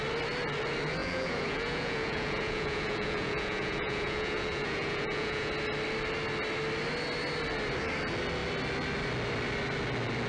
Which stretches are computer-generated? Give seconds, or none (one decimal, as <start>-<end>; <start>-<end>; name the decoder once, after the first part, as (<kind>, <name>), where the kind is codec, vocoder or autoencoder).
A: 1.0-5.5 (vocoder, Vocos)